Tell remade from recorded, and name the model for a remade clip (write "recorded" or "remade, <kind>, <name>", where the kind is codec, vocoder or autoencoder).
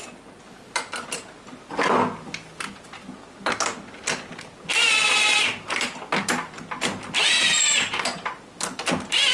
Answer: recorded